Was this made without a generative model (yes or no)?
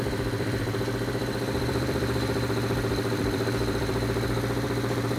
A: no